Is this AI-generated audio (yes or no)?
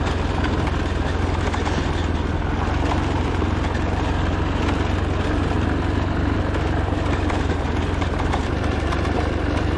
no